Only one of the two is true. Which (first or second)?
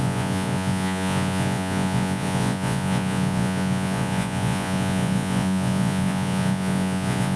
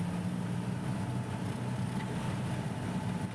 second